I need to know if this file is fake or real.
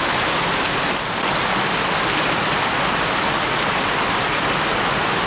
real